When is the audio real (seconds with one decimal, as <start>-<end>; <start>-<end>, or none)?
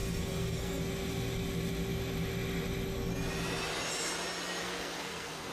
0.8-4.6